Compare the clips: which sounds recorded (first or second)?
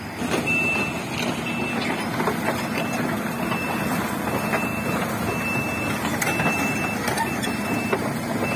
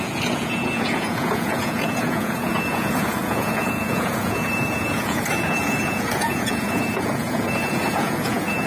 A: first